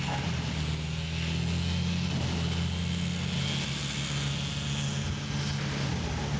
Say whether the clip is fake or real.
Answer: real